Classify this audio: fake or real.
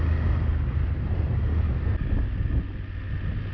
real